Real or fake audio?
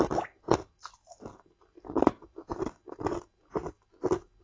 real